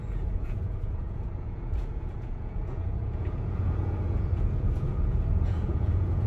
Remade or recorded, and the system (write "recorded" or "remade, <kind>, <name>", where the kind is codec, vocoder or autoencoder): remade, vocoder, Vocos